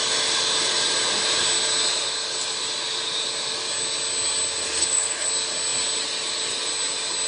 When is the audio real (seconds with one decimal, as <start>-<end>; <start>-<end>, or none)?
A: 0.0-4.8; 5.3-7.3